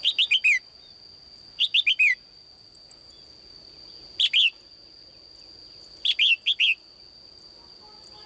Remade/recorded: recorded